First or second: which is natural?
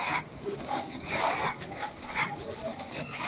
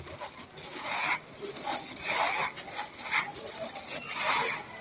second